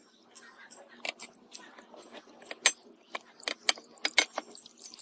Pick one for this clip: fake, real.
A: real